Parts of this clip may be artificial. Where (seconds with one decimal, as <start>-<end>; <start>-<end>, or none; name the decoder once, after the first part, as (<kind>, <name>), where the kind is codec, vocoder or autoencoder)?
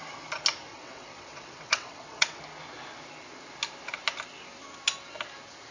0.7-2.4 (vocoder, WaveNeXt)